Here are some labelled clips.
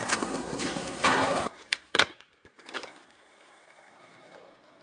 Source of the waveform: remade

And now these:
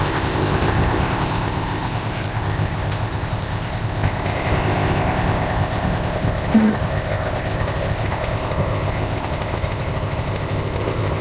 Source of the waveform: remade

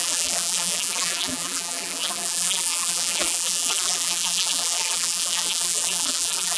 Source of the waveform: remade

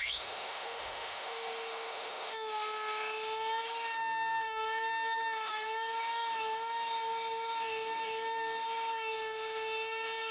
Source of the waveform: remade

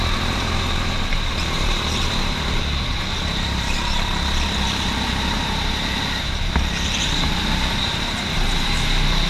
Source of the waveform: remade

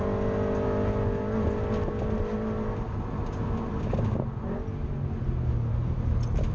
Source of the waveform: recorded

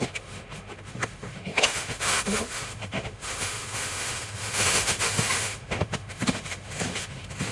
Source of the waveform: remade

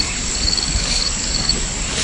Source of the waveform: remade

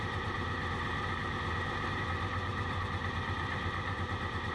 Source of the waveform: remade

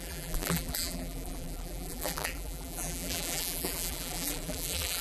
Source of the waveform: remade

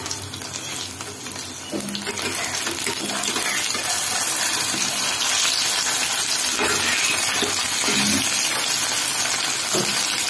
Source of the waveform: recorded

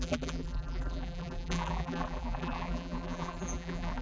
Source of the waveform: remade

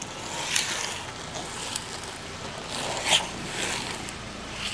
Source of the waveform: recorded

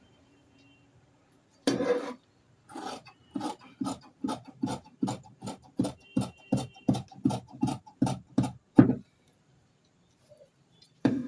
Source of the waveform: remade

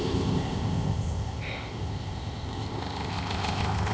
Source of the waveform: remade